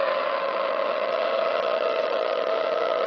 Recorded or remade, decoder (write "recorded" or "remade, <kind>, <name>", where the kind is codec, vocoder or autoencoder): remade, vocoder, HiFi-GAN